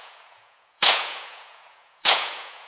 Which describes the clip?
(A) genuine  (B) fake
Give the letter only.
B